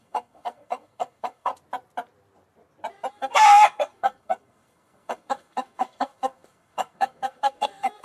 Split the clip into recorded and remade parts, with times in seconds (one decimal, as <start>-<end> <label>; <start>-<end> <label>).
0.0-1.5 remade; 1.5-3.1 recorded; 3.1-8.0 remade